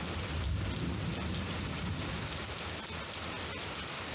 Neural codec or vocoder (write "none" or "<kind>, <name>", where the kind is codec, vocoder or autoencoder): none